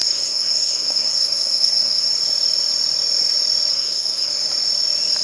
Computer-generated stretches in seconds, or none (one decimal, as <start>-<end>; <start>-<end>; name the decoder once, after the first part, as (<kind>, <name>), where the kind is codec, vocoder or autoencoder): 0.0-2.1 (codec, SNAC); 3.7-4.3